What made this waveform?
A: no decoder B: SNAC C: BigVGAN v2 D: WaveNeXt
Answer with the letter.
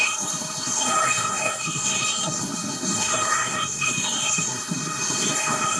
B